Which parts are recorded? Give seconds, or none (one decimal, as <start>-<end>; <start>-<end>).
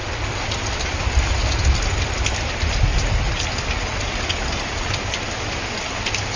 1.1-2.9; 5.9-6.4